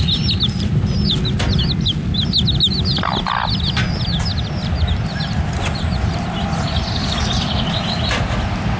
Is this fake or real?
real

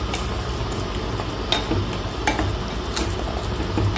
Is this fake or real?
real